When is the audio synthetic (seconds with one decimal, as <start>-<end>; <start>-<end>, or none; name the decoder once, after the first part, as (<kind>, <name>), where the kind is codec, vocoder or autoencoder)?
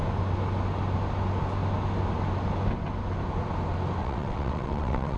4.0-5.2 (vocoder, WaveNeXt)